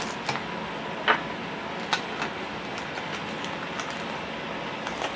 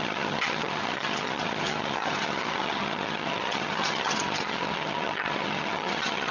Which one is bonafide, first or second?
first